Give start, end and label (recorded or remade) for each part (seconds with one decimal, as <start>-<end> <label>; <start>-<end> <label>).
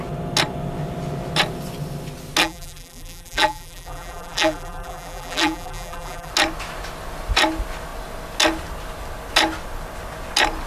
0.0-2.4 recorded; 2.4-6.3 remade; 6.3-10.7 recorded